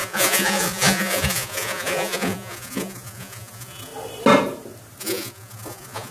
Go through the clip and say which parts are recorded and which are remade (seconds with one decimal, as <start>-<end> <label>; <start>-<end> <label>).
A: 0.0-3.9 remade; 3.9-5.0 recorded; 5.0-6.1 remade